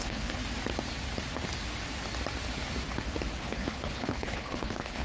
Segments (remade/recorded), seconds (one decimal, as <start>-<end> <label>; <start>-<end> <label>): 0.0-0.4 remade; 0.4-3.4 recorded; 3.4-5.0 remade